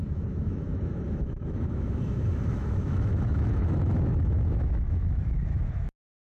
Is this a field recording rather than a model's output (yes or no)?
no